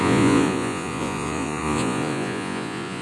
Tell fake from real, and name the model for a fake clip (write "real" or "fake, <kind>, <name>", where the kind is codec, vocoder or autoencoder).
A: fake, vocoder, Vocos